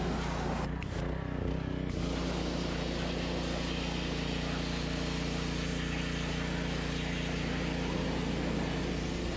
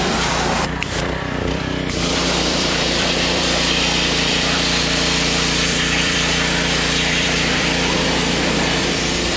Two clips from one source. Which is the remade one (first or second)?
second